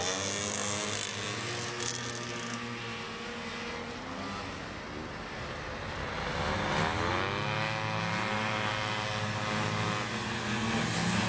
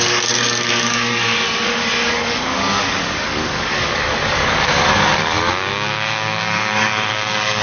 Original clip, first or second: first